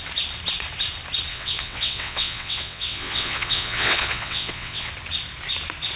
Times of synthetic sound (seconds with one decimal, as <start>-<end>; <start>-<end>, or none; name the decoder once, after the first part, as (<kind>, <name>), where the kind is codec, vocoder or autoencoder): 1.3-4.9 (vocoder, WaveNeXt)